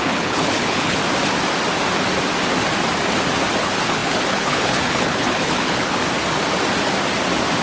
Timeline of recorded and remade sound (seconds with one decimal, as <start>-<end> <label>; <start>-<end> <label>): 0.0-1.0 remade; 1.0-3.6 recorded; 3.6-6.0 remade; 6.0-7.6 recorded